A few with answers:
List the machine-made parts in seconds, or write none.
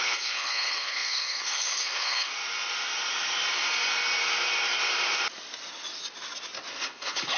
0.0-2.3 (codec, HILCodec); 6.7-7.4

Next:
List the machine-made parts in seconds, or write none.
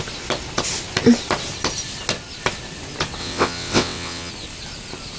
3.2-4.3 (vocoder, WaveNeXt)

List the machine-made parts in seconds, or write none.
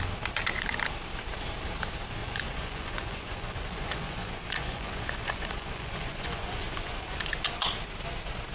2.2-7.2 (vocoder, Vocos)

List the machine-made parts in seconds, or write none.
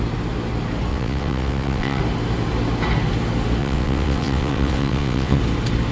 0.9-2.0 (vocoder, WaveNeXt); 3.6-5.4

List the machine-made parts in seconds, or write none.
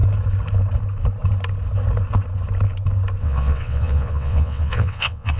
3.2-5.4 (vocoder, WaveNeXt)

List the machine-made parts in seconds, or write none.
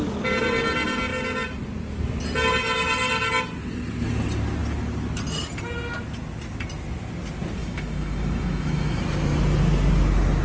7.6-9.0 (autoencoder, DAC-VAE)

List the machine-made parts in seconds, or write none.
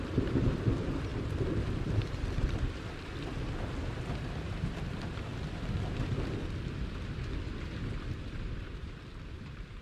0.0-5.3 (vocoder, BigVGAN v2); 8.6-9.8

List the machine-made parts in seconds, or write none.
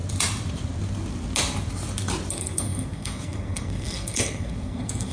2.3-5.1 (codec, SNAC)